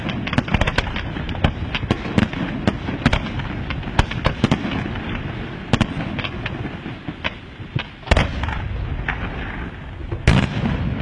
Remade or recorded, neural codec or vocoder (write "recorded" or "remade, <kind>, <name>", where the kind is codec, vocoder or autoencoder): recorded